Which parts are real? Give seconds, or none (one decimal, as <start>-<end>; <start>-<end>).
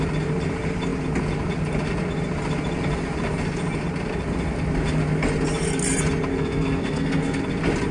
0.0-6.3; 7.4-7.9